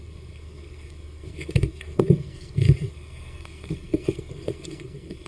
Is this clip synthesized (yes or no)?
yes